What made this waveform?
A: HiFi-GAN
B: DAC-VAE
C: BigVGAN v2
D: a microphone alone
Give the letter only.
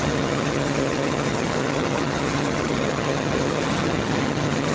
A